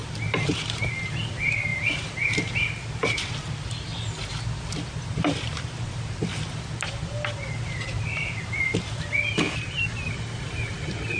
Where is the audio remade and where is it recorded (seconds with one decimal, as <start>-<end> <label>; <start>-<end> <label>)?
0.0-1.7 recorded; 1.7-2.4 remade; 2.4-3.9 recorded; 3.9-9.1 remade; 9.1-11.2 recorded